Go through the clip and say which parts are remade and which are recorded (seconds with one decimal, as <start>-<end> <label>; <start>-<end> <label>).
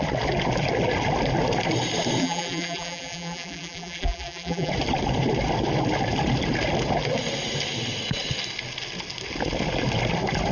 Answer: 0.0-2.2 recorded; 2.2-4.7 remade; 4.7-10.5 recorded